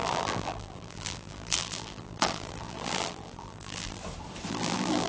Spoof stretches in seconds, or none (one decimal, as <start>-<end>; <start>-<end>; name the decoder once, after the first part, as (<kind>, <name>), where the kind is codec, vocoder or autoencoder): 0.0-4.0 (vocoder, BigVGAN v2); 4.5-5.1